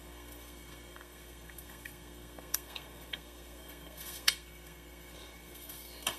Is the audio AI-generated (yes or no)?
yes